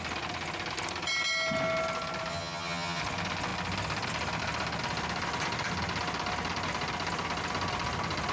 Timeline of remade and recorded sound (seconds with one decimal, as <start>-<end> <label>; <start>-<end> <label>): 0.0-2.3 recorded; 2.3-3.0 remade; 3.0-8.3 recorded